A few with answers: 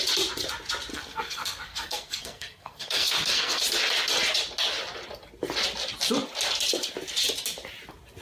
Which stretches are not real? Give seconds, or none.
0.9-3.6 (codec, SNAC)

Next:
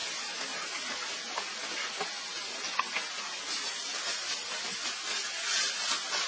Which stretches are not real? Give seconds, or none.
none